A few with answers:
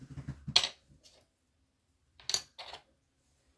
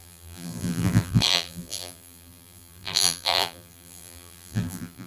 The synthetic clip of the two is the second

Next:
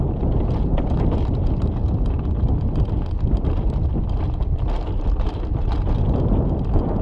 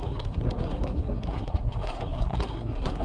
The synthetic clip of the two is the second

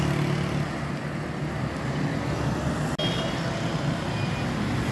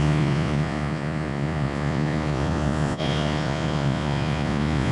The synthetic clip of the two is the second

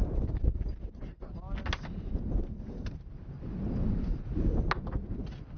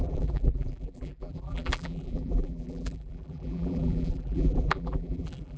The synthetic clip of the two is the second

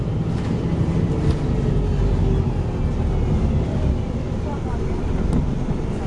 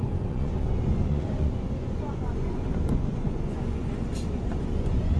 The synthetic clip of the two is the second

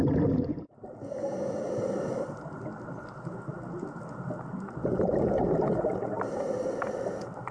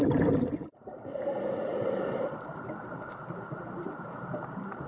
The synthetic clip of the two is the second